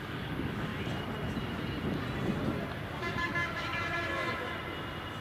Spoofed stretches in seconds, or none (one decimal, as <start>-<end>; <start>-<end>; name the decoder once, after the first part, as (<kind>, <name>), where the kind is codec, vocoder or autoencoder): 0.0-0.7 (codec, DAC); 3.0-3.8